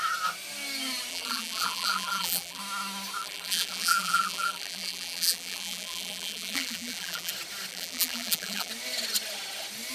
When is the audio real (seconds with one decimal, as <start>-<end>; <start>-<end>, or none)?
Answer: 0.0-1.1; 2.6-3.2; 7.3-7.7; 8.7-9.9